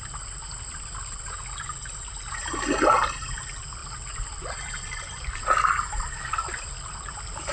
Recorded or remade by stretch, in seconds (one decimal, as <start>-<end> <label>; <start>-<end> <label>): 0.0-7.5 recorded